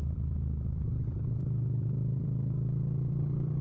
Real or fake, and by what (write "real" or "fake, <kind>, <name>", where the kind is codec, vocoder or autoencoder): fake, vocoder, BigVGAN v2